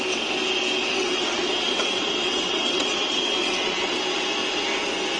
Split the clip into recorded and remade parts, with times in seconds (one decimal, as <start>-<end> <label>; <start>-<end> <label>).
0.0-0.9 recorded; 0.9-4.0 remade; 4.0-5.2 recorded